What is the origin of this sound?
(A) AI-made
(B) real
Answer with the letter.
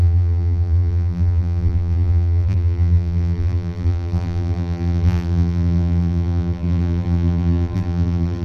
A